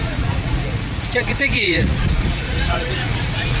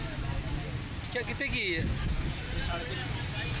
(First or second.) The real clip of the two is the second